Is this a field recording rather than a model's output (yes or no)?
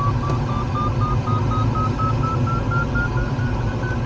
yes